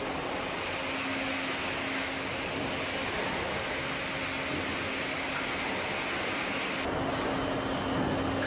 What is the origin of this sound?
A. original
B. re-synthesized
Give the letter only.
A